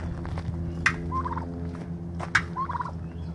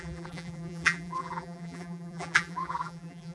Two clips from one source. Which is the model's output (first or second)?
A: second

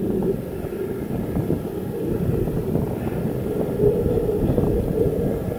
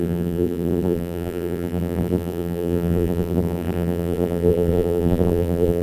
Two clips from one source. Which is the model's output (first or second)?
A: second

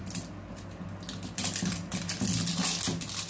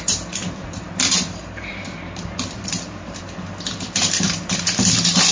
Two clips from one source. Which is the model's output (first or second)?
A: second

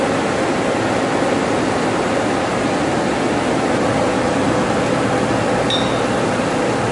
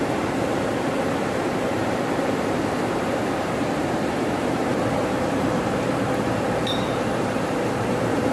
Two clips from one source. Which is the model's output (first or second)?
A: second